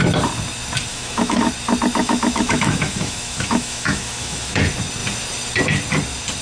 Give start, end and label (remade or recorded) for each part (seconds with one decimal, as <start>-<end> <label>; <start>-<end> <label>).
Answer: 0.0-0.9 recorded; 0.9-1.5 remade; 1.5-2.0 recorded; 2.0-4.6 remade; 4.6-6.4 recorded